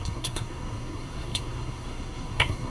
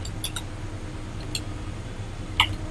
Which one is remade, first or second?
first